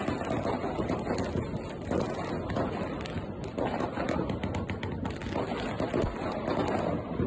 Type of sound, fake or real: real